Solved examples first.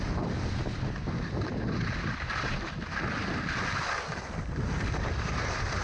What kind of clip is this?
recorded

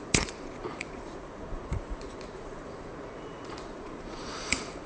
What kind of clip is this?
remade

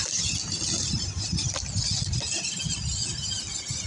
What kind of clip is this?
recorded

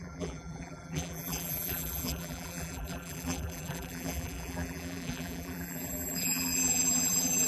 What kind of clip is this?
remade